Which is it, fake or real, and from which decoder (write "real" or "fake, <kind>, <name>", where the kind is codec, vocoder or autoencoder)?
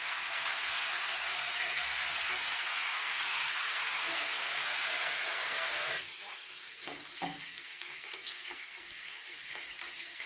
fake, codec, SNAC